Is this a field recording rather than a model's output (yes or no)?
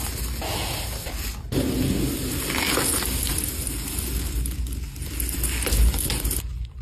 yes